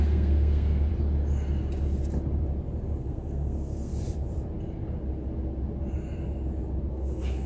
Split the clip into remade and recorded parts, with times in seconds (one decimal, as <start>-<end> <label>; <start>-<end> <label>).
0.0-0.9 remade; 0.9-3.0 recorded; 3.0-3.9 remade; 3.9-6.9 recorded; 6.9-7.5 remade